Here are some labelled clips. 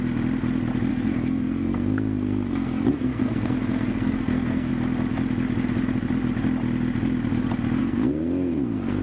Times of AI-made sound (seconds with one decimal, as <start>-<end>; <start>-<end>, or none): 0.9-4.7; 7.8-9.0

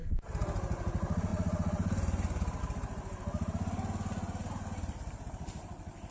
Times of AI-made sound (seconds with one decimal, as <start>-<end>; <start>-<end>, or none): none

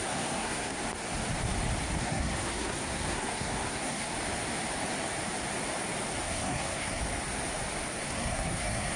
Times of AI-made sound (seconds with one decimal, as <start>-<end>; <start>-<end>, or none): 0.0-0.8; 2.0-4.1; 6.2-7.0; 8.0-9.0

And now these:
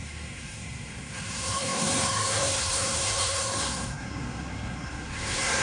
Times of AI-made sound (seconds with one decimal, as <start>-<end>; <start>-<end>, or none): 0.0-5.6

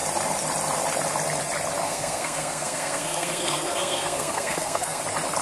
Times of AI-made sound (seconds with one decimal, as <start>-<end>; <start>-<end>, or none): 1.8-5.0

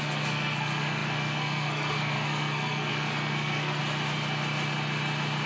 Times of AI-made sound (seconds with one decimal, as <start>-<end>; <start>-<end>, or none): 0.0-3.8